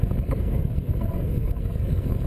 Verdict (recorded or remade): remade